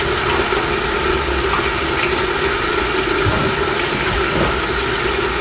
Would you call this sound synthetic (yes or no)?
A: no